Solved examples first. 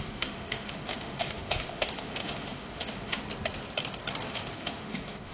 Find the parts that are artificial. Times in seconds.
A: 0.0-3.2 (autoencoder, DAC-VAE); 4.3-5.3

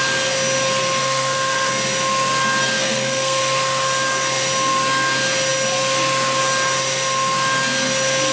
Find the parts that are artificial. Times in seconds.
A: 1.0-1.7 (codec, SNAC); 2.6-3.4